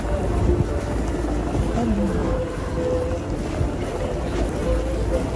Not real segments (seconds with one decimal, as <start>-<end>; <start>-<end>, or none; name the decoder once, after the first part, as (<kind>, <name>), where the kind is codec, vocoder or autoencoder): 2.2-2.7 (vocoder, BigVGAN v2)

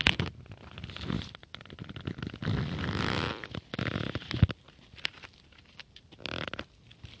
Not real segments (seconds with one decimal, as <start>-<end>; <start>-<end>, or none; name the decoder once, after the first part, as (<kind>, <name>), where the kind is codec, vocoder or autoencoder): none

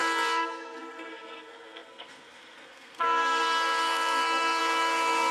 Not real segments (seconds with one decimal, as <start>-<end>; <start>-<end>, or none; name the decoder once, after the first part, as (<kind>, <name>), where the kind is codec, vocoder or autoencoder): 0.0-5.3 (codec, SNAC)

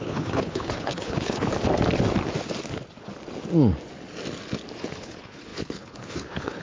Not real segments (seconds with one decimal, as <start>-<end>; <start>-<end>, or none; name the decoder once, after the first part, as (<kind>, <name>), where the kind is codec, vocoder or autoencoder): 0.0-1.5 (codec, HILCodec); 4.8-6.6